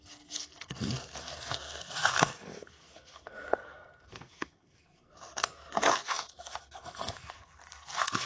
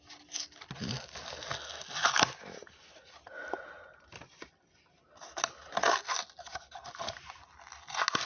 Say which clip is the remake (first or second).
first